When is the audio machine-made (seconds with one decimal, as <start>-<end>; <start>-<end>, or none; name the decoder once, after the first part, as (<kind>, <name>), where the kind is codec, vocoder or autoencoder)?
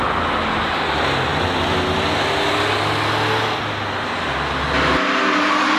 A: none